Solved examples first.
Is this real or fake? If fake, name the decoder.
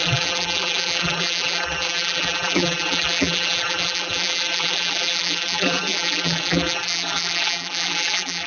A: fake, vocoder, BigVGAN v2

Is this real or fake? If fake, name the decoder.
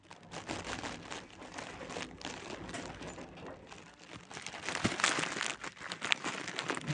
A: real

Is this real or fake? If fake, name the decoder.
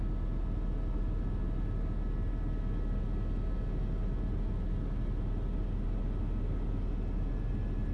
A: real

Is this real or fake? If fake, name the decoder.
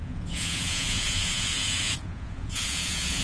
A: fake, vocoder, Vocos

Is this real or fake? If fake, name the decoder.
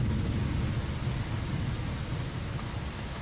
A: real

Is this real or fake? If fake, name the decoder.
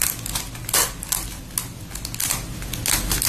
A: real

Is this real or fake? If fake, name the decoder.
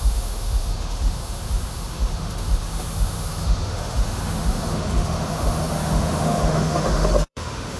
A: fake, autoencoder, DAC-VAE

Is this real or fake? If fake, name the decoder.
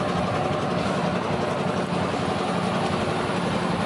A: real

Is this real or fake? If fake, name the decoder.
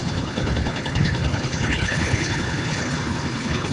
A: fake, codec, HILCodec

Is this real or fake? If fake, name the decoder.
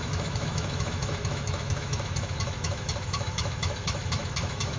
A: fake, autoencoder, DAC-VAE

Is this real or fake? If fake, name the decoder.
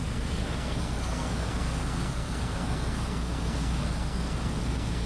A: fake, codec, SNAC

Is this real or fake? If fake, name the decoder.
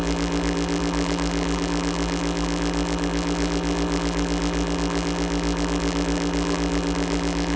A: fake, vocoder, BigVGAN v2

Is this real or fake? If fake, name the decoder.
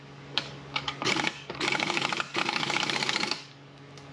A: fake, codec, DAC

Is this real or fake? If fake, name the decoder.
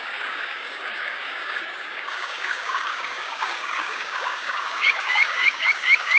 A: fake, codec, DAC